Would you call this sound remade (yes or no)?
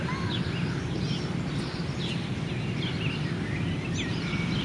no